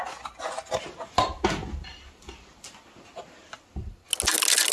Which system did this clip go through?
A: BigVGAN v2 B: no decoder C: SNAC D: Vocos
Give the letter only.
B